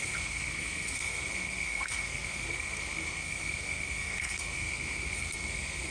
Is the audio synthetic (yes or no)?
yes